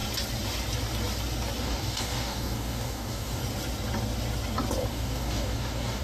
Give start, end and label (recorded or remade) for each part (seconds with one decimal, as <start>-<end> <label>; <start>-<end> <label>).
0.0-1.6 recorded; 1.6-3.4 remade; 3.4-4.9 recorded; 4.9-6.0 remade